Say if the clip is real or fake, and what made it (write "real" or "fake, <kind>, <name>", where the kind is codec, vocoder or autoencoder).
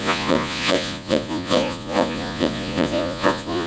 fake, vocoder, Vocos